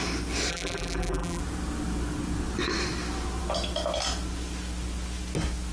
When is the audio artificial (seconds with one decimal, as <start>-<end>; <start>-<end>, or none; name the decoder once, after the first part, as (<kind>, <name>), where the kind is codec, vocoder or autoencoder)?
0.5-1.4 (vocoder, BigVGAN v2)